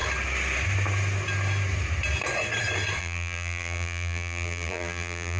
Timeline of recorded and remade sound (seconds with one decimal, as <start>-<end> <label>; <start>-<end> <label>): 0.0-3.0 recorded; 3.0-5.4 remade

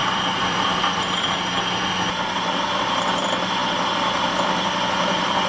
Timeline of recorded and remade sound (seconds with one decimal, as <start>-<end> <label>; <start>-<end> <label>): 0.0-1.4 remade; 1.4-5.5 recorded

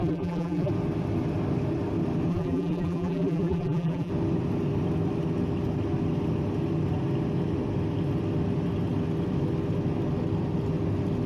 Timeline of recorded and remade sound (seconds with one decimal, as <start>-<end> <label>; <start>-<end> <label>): 0.0-0.7 remade; 0.7-2.3 recorded; 2.3-4.1 remade; 4.1-11.3 recorded

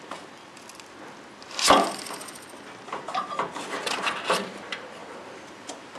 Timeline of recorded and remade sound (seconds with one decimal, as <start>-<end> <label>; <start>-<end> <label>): 0.0-0.5 remade; 0.5-2.9 recorded; 2.9-6.0 remade